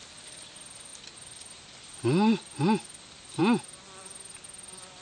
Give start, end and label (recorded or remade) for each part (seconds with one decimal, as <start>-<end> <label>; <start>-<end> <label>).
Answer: 0.0-5.0 recorded